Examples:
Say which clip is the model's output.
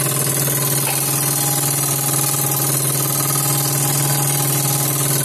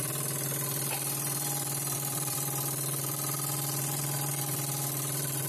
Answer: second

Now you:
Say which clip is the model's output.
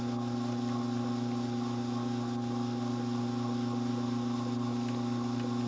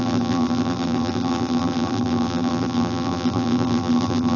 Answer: second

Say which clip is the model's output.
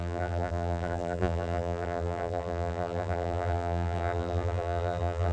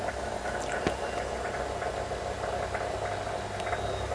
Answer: first